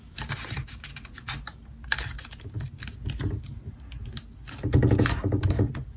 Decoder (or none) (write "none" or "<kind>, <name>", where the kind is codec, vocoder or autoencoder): none